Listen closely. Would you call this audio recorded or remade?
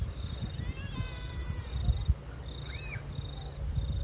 recorded